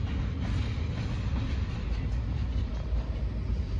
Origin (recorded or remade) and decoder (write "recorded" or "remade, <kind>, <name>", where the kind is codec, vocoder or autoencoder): recorded